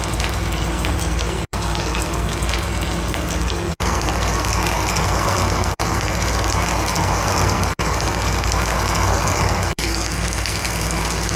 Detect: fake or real fake